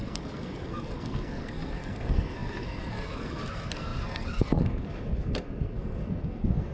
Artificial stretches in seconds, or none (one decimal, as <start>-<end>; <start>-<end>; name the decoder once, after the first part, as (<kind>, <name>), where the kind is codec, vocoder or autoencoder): 0.0-6.7 (codec, SNAC)